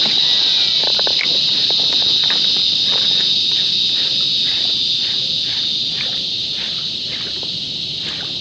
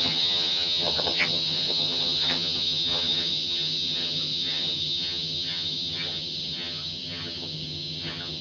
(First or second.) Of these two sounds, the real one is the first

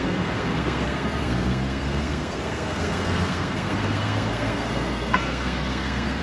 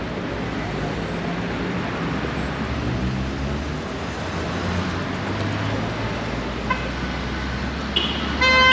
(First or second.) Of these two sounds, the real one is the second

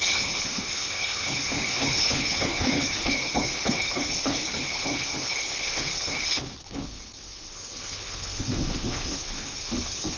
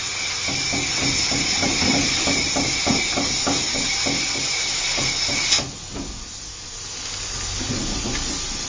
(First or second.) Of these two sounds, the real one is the second